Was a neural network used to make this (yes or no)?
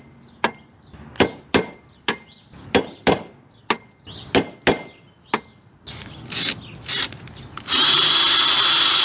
no